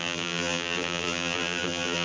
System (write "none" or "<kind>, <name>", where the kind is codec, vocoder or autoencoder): vocoder, BigVGAN v2